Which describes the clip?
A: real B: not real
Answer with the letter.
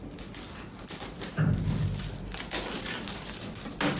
A